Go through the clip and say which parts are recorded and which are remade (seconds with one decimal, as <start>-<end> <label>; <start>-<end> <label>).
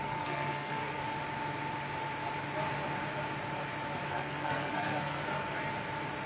0.0-1.0 remade; 1.0-4.1 recorded; 4.1-5.2 remade; 5.2-6.3 recorded